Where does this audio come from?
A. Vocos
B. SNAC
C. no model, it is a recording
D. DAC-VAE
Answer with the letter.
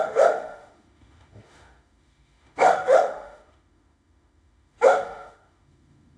D